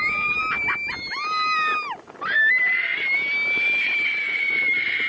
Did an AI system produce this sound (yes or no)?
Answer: no